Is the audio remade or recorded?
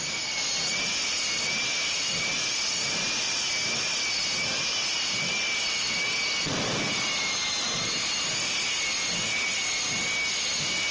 recorded